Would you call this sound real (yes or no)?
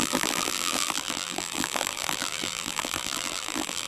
no